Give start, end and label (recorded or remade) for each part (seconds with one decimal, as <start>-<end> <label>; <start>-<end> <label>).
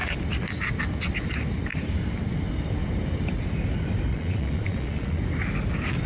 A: 0.0-4.1 recorded; 4.1-5.2 remade; 5.2-6.1 recorded